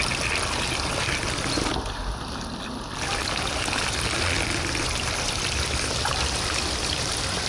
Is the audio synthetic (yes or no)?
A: no